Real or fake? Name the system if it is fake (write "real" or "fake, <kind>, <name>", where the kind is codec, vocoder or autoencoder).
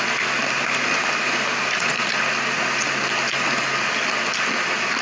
real